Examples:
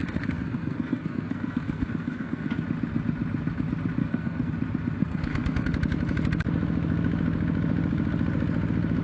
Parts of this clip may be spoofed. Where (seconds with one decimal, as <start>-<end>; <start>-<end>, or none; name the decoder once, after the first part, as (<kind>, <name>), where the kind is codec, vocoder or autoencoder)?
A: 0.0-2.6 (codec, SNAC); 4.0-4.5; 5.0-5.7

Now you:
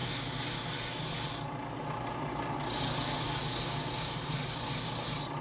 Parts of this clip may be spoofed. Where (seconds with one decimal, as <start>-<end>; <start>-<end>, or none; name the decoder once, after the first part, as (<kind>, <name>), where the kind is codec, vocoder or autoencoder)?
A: none

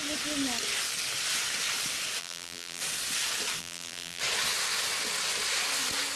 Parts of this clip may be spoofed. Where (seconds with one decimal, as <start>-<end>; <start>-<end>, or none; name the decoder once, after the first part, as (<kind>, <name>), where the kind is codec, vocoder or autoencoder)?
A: 2.2-2.8 (vocoder, BigVGAN v2); 3.6-4.2